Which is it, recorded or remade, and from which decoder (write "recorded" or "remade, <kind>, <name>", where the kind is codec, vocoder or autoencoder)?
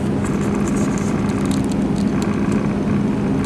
recorded